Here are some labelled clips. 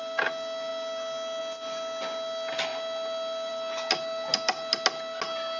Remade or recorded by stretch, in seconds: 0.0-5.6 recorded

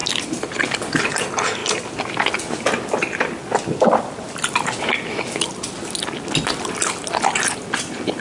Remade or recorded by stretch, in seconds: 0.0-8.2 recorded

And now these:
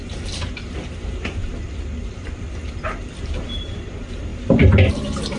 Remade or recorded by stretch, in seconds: 0.0-1.4 remade; 1.4-3.2 recorded; 3.2-4.3 remade; 4.3-4.9 recorded; 4.9-5.4 remade